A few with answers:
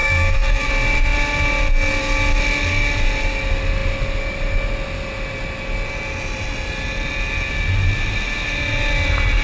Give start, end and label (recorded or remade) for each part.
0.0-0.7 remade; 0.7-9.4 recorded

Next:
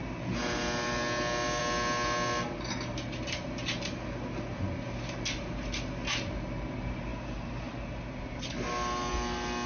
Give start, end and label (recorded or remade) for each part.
0.0-9.7 recorded

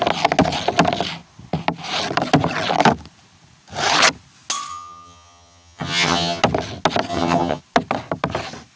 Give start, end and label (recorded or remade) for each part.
0.0-4.7 recorded; 4.7-6.4 remade; 6.4-7.1 recorded; 7.1-7.6 remade; 7.6-8.8 recorded

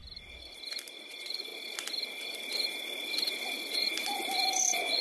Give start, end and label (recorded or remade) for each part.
0.0-1.1 recorded; 1.1-1.5 remade; 1.5-4.5 recorded; 4.5-5.0 remade

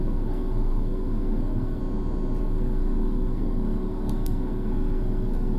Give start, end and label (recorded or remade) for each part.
0.0-1.8 remade; 1.8-2.4 recorded; 2.4-5.6 remade

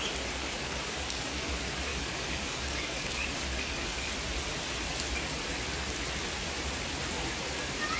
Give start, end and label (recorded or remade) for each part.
0.0-0.4 recorded; 0.4-1.5 remade; 1.5-1.9 recorded; 1.9-4.1 remade; 4.1-8.0 recorded